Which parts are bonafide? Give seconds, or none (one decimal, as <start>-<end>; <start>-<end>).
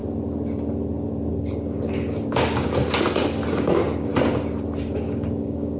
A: 0.0-1.3; 2.8-3.5; 4.1-4.8